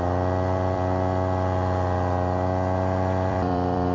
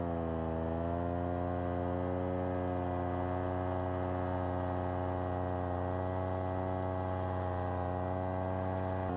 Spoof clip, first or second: first